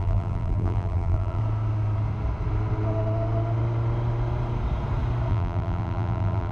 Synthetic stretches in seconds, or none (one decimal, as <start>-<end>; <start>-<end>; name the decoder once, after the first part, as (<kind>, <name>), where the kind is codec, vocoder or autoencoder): 0.0-1.4 (vocoder, BigVGAN v2); 5.3-6.5